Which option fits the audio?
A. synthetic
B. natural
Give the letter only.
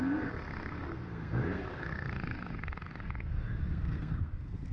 A